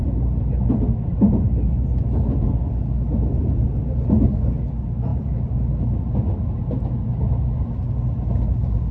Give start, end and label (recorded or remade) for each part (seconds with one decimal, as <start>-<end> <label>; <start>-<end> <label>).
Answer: 0.0-8.9 recorded